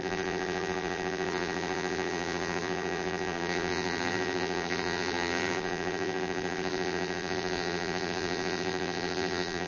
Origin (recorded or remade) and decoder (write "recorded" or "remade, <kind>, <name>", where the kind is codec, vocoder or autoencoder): remade, vocoder, BigVGAN v2